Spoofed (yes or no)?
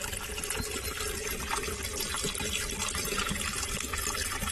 no